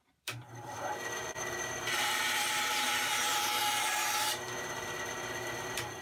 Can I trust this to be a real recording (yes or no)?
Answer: no